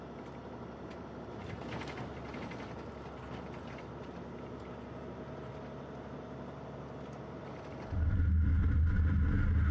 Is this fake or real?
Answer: real